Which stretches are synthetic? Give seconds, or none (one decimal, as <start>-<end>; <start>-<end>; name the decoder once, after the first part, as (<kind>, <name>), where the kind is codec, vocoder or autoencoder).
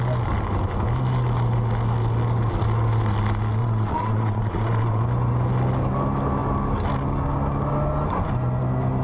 3.6-5.0 (vocoder, Vocos)